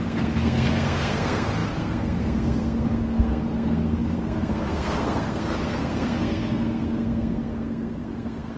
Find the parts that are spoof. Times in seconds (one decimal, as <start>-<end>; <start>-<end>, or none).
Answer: 0.0-8.6